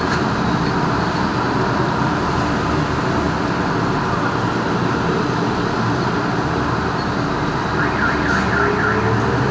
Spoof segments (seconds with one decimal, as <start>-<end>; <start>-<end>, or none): none